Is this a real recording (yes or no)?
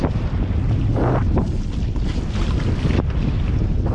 yes